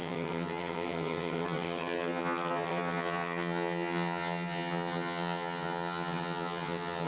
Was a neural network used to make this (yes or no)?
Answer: yes